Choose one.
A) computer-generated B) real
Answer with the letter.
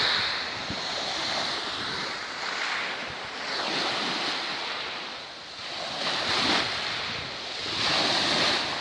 B